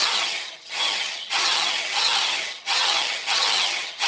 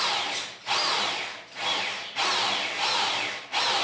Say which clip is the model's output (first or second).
first